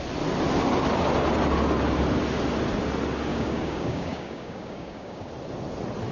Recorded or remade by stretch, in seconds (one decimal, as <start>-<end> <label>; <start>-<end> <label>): 0.0-3.3 recorded; 3.3-5.3 remade; 5.3-6.1 recorded